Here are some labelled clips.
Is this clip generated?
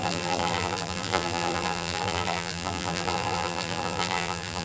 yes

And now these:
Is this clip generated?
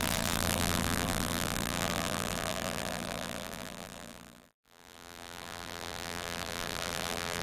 yes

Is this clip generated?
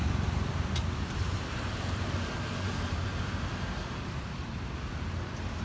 yes